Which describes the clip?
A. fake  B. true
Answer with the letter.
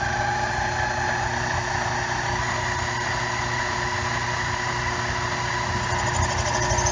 B